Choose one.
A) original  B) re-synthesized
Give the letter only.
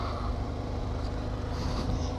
A